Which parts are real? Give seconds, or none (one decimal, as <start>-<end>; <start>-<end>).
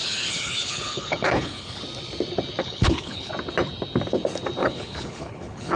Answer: 1.8-2.6; 3.3-4.6